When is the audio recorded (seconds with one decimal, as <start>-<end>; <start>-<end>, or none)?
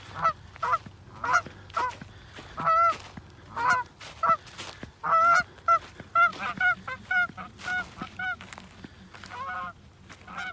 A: 0.0-10.5